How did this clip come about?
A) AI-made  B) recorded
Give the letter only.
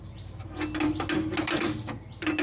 B